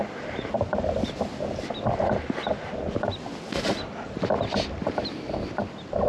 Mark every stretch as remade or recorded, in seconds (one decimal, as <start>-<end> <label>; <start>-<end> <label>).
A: 0.0-2.5 remade; 2.5-4.5 recorded; 4.5-6.1 remade